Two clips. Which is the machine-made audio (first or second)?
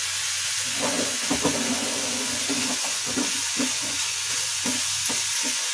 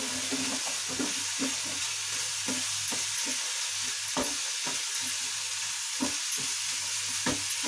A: first